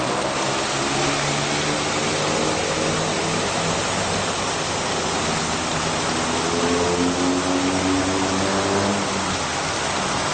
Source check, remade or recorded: recorded